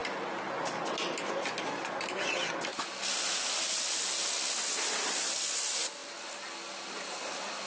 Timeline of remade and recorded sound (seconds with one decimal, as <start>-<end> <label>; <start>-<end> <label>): 0.0-7.7 recorded